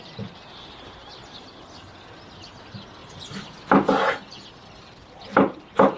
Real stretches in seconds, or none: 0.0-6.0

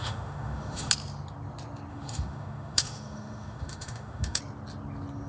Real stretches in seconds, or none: 0.9-1.9; 4.4-5.3

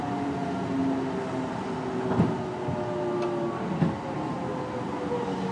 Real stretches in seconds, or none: 0.0-5.5

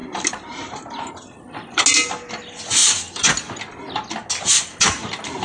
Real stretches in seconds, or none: 1.1-5.4

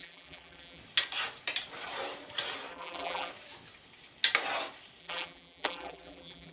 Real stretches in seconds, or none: 0.8-2.7; 3.3-5.0

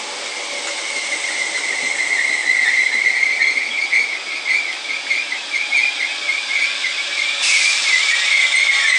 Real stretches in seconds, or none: 0.0-9.0

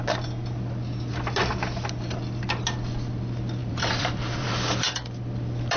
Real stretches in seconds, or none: 0.0-3.6; 4.5-5.8